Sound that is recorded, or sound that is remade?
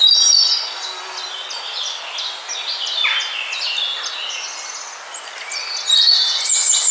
recorded